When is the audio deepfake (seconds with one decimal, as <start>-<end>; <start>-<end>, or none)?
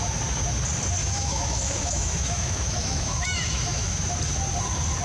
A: 1.0-4.0